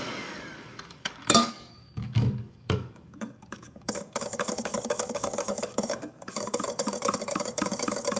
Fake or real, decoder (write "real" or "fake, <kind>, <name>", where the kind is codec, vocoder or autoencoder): fake, codec, DAC